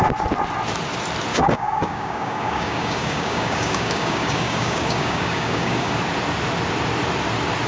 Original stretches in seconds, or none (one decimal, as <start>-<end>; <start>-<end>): 0.0-1.3; 5.9-7.7